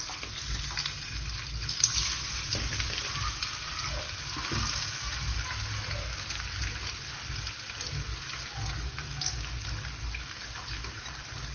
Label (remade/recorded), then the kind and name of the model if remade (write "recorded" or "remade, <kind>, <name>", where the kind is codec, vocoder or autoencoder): recorded